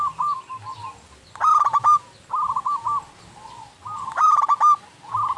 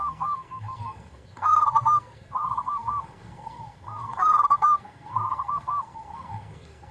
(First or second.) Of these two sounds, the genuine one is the first